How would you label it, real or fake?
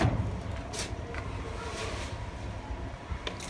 real